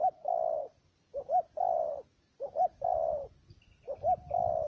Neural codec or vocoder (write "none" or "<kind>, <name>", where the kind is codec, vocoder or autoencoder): none